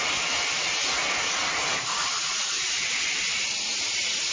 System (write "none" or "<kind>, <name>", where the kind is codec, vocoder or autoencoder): none